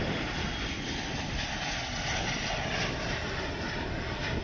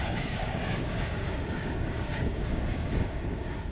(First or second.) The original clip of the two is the first